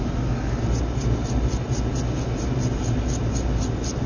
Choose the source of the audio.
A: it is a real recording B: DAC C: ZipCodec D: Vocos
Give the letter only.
A